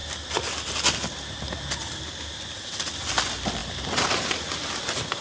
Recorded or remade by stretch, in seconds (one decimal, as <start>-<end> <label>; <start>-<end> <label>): 0.0-5.2 recorded